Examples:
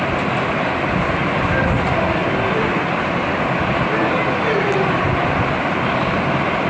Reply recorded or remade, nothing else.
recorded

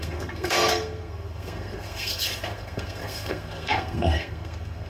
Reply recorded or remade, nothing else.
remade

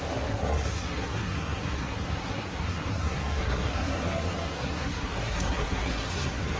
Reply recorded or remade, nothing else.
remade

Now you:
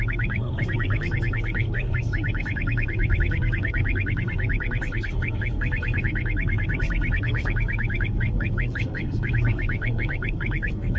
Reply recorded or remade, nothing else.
remade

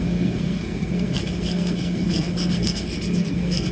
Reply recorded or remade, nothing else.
remade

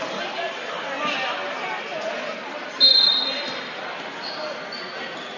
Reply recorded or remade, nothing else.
recorded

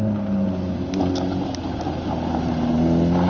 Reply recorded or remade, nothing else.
recorded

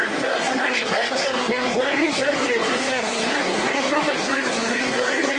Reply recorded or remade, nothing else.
remade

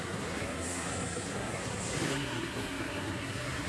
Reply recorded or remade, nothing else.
remade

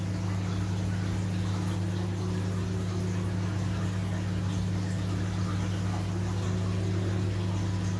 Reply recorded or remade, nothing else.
recorded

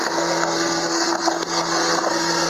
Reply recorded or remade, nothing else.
remade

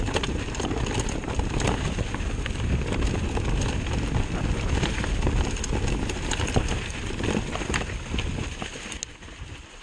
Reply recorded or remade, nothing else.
recorded